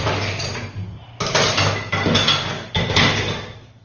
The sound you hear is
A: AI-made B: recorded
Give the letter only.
B